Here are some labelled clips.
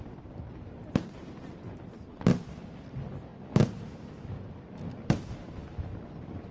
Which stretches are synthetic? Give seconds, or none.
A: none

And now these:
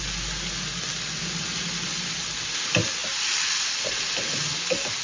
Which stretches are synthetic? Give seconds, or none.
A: none

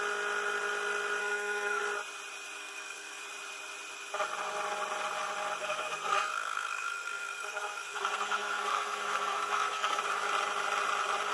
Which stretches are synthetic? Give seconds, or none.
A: 1.2-1.8 (codec, SNAC); 2.6-3.2; 5.6-10.0

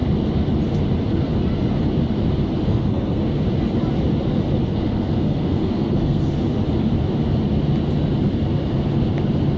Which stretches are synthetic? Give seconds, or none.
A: 2.6-3.4 (codec, SNAC); 4.7-6.3

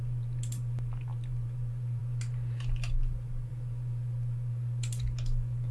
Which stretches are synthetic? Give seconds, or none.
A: none